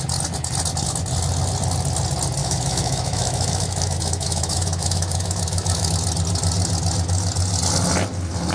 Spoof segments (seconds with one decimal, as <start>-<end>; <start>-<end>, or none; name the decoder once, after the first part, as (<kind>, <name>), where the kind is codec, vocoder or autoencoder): 2.4-5.9 (autoencoder, DAC-VAE)